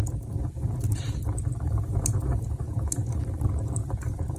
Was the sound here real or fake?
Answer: fake